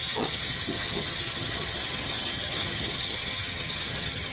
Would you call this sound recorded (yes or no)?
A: no